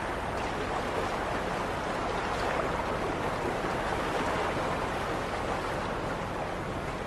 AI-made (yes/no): no